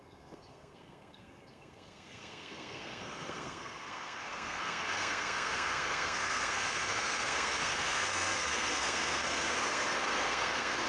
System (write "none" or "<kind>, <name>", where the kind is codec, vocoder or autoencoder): codec, SNAC